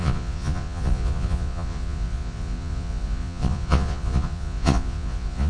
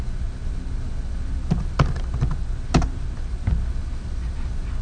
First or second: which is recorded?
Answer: second